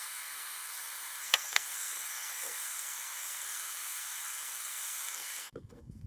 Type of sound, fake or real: fake